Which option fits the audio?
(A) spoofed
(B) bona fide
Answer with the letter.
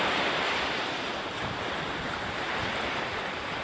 B